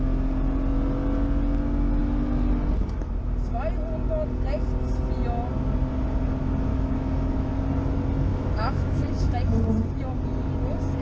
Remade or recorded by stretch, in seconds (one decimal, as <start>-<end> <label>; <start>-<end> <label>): 0.0-6.7 recorded; 6.7-7.5 remade; 7.5-8.3 recorded; 8.3-9.3 remade; 9.3-11.0 recorded